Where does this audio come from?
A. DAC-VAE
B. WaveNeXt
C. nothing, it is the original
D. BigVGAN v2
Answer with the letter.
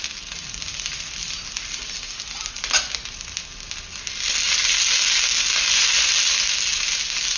C